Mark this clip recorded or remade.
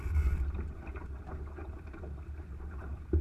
remade